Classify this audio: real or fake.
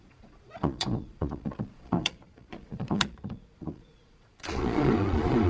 fake